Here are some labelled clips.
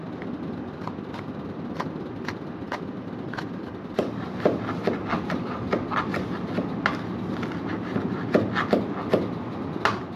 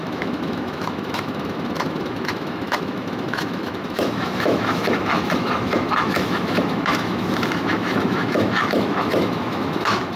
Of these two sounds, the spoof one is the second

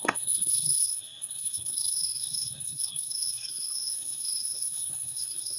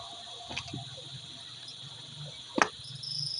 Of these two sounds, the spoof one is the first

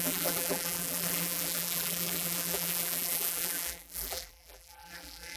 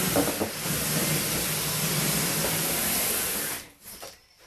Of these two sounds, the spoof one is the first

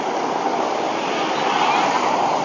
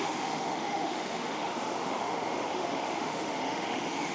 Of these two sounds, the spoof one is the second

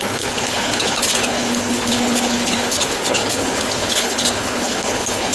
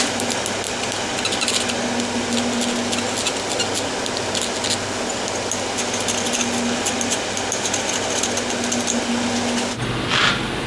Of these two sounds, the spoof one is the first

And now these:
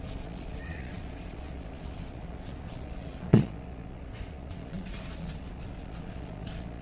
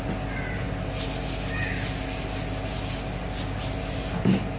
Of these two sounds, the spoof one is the first